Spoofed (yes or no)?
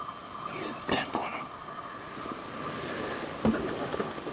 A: no